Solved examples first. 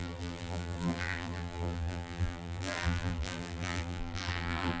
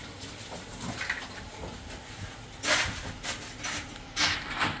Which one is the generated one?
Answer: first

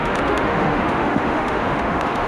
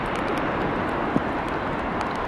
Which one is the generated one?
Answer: first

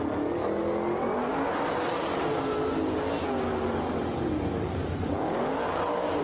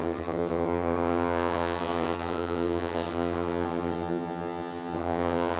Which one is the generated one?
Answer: second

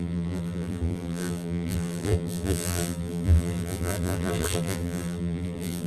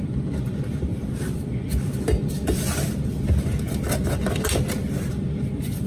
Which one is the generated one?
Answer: first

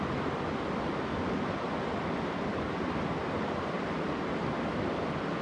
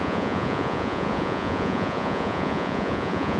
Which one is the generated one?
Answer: second